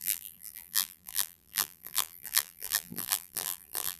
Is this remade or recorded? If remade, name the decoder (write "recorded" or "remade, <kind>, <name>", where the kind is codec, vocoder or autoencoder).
remade, vocoder, BigVGAN v2